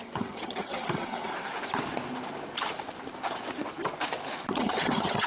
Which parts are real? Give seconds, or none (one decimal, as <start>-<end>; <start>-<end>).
1.3-4.5